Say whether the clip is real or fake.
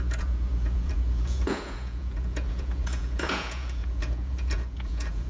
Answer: fake